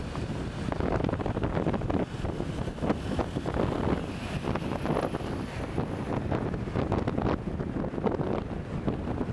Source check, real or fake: real